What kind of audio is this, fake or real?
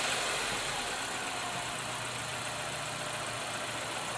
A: real